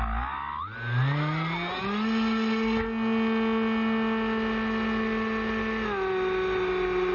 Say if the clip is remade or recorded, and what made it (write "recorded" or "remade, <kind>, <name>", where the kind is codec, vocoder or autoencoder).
recorded